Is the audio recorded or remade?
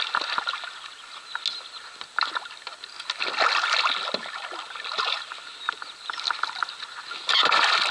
recorded